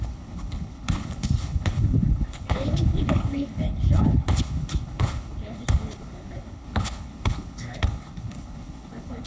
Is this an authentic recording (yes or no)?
no